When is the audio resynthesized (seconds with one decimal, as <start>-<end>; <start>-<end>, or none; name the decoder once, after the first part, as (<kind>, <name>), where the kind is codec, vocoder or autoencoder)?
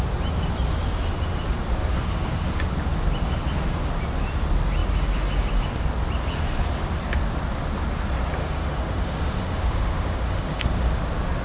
1.7-2.7 (autoencoder, DAC-VAE); 8.4-11.0